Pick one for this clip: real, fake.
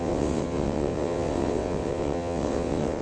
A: fake